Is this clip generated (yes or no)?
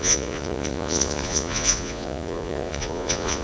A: yes